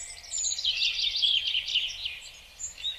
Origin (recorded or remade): recorded